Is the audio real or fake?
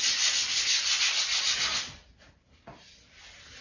real